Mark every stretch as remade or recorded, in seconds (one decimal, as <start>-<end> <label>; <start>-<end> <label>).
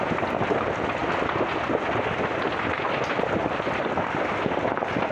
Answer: 0.0-5.1 recorded